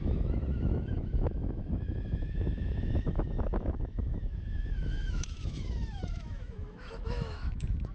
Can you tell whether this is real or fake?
fake